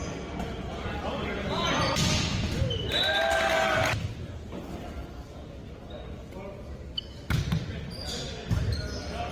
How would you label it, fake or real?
real